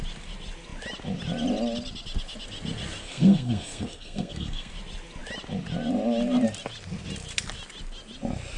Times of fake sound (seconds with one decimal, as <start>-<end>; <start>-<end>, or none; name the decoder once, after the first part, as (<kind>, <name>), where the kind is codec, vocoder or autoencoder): 3.0-4.7 (codec, SNAC)